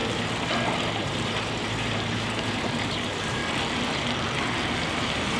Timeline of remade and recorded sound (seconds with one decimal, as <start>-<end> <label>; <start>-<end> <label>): 0.0-0.9 recorded; 0.9-3.4 remade; 3.4-5.4 recorded